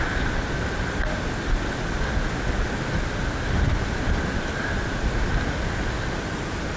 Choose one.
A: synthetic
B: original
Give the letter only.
B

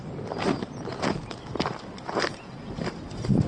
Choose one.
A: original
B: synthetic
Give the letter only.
A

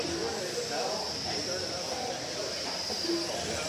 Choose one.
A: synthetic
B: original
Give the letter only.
B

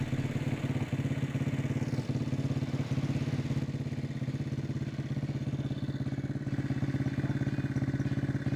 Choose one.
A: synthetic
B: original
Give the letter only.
B